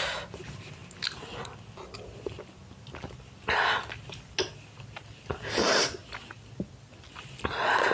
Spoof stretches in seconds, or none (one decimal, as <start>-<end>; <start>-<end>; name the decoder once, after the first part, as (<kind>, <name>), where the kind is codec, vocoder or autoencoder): none